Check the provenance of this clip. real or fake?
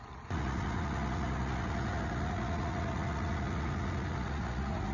fake